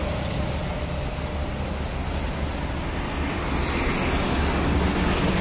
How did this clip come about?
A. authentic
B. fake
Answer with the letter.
A